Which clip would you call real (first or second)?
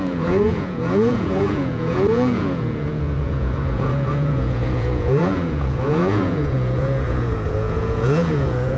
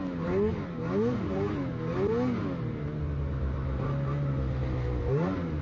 second